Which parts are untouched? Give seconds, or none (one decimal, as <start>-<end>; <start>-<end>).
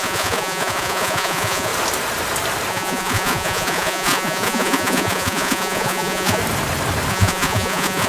1.7-2.7; 6.4-7.1